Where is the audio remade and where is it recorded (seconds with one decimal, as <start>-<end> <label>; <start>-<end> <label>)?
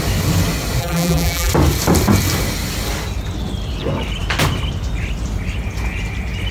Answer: 0.0-0.8 recorded; 0.8-1.5 remade; 1.5-6.5 recorded